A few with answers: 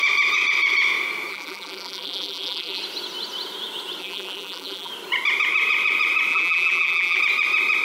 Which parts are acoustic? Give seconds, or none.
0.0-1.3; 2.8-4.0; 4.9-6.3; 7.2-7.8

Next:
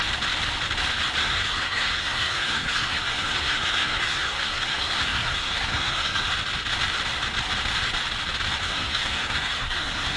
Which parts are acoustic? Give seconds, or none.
0.0-1.2; 6.3-8.6

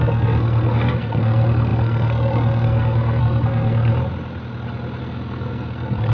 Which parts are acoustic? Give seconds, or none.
3.9-5.0

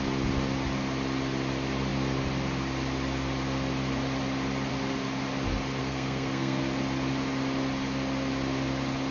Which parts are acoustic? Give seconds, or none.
0.0-5.8; 6.6-9.1

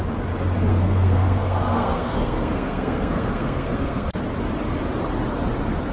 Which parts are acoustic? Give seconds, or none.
0.0-0.7; 4.2-5.9